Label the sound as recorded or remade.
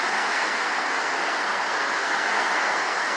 remade